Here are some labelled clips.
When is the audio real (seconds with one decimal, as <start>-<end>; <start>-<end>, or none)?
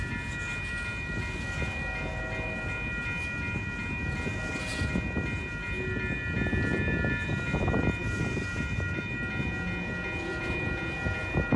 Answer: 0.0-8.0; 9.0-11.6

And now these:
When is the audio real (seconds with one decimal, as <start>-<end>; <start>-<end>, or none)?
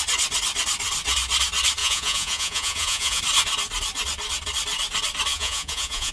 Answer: 0.0-1.8; 3.2-5.3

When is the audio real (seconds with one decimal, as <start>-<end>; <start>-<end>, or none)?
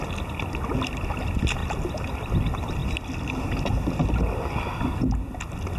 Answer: 0.0-5.8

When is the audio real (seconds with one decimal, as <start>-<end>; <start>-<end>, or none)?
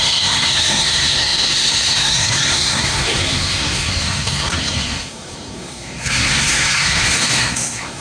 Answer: none